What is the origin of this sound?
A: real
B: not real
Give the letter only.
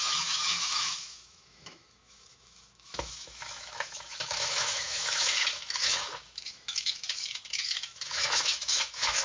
B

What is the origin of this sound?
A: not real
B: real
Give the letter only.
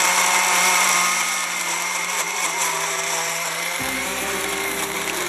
A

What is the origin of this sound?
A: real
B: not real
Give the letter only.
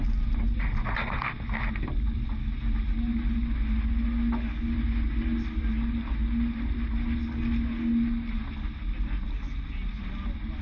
A